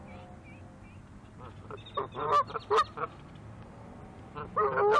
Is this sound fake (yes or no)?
no